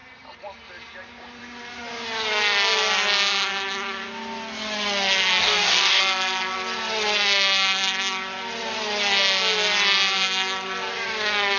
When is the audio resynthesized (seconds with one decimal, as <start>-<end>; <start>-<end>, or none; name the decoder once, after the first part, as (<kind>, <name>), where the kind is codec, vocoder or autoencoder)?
5.4-6.0 (codec, DAC)